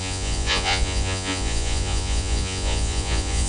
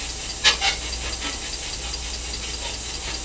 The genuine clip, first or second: second